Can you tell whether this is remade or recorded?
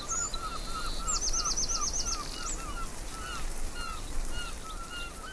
recorded